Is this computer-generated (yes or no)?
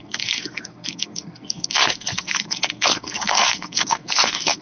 yes